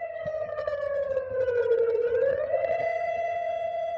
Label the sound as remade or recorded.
remade